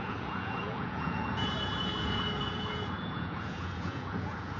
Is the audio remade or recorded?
remade